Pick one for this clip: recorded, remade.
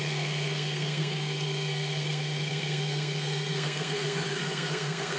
remade